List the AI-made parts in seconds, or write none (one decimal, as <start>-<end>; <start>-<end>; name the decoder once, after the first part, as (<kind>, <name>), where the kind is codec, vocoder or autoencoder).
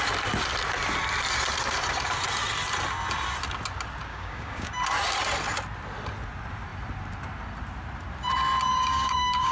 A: 4.1-4.7 (codec, DAC); 8.7-9.5